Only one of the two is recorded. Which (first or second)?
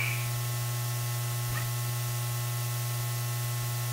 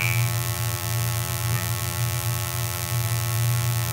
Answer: first